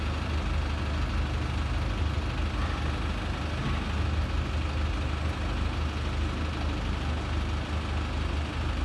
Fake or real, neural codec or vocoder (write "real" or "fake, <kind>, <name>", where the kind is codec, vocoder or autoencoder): real